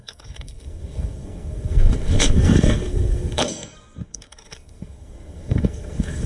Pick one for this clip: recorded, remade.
remade